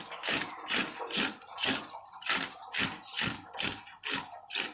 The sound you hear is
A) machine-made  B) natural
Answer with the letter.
B